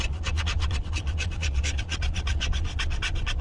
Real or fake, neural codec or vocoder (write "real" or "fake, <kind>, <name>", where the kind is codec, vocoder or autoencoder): fake, vocoder, Vocos